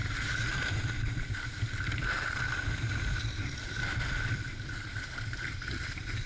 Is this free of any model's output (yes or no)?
no